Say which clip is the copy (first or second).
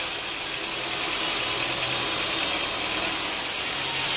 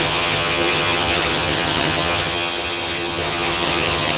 second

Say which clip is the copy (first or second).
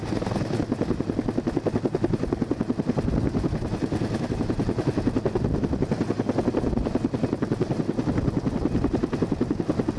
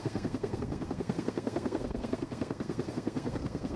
second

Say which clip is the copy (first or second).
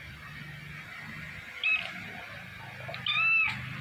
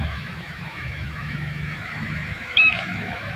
second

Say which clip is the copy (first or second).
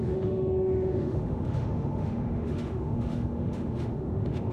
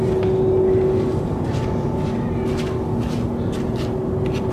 first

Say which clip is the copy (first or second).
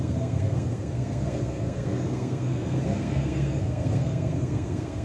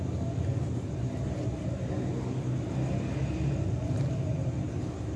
first